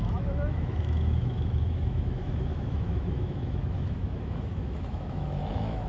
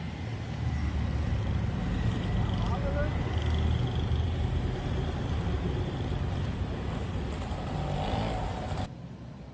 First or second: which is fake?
first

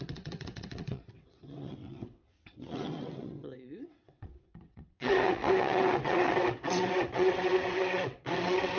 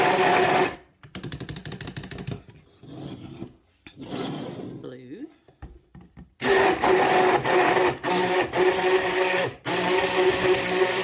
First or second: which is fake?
first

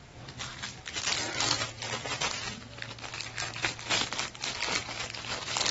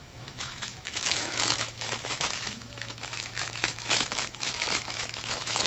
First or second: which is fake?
second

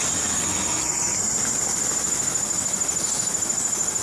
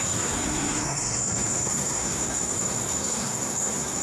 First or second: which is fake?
second